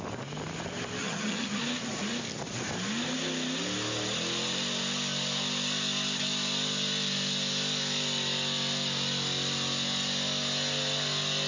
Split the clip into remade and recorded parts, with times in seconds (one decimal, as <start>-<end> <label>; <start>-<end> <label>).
0.0-1.0 recorded; 1.0-1.6 remade; 1.6-11.5 recorded